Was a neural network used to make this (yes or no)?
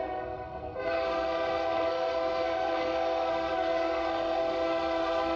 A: yes